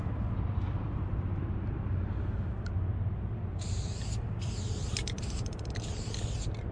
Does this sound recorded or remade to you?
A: recorded